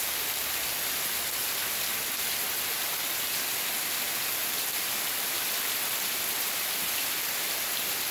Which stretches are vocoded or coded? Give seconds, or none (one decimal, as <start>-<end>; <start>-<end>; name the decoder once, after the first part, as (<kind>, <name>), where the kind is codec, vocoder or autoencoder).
4.4-7.0 (vocoder, BigVGAN v2)